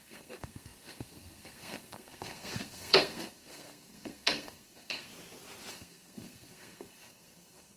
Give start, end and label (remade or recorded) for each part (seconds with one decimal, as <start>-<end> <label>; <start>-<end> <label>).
0.0-5.1 remade; 5.1-5.7 recorded; 5.7-7.8 remade